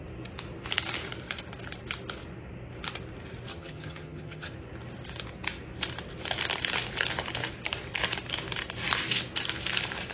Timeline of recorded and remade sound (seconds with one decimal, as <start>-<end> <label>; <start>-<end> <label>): 0.0-3.5 recorded; 3.5-4.5 remade; 4.5-10.1 recorded